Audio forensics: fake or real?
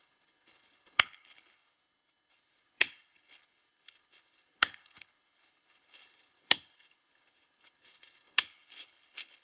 fake